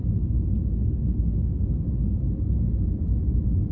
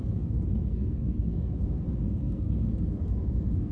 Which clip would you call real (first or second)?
first